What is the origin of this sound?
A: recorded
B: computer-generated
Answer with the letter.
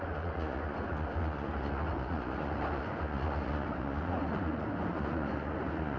B